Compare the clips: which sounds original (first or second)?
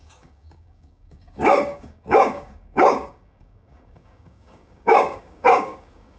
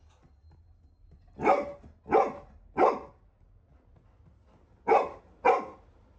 second